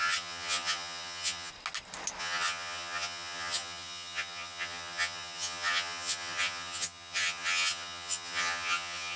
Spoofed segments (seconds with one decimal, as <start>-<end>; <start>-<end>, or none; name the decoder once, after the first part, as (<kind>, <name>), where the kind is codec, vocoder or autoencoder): 0.0-1.5 (vocoder, HiFi-GAN); 2.2-9.2